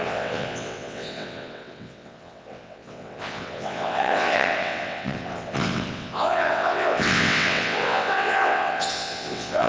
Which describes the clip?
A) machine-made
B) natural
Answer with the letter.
A